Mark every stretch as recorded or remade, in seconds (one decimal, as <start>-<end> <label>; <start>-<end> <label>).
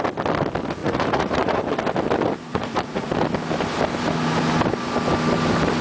0.0-0.8 recorded; 0.8-1.6 remade; 1.6-2.5 recorded; 2.5-3.1 remade; 3.1-5.8 recorded